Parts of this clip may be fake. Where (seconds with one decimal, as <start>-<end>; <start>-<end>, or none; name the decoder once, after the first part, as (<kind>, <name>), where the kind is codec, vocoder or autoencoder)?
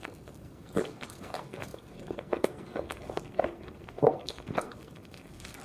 0.0-5.6 (codec, SNAC)